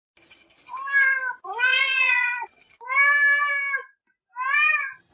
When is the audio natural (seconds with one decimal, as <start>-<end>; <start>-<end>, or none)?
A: 0.0-1.7; 2.3-5.1